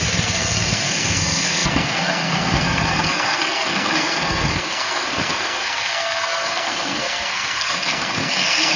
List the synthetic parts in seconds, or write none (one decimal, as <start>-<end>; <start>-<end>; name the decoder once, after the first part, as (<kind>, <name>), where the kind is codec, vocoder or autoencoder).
0.0-8.8 (codec, SNAC)